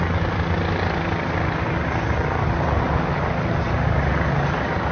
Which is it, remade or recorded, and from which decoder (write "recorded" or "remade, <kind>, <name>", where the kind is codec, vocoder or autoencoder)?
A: recorded